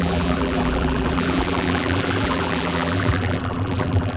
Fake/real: fake